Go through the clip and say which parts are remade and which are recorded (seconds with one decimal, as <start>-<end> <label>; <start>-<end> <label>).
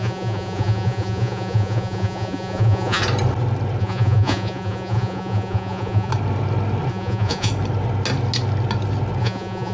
0.0-3.0 remade; 3.0-3.8 recorded; 3.8-6.1 remade; 6.1-6.9 recorded; 6.9-7.5 remade; 7.5-9.2 recorded; 9.2-9.7 remade